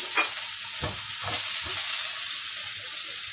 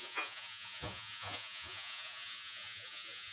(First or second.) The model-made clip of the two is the second